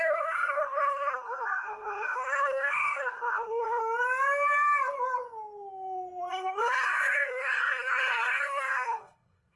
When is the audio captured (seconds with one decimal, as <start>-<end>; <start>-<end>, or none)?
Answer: 3.8-6.3